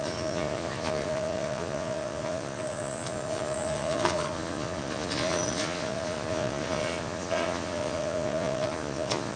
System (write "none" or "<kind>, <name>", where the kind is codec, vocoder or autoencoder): vocoder, Vocos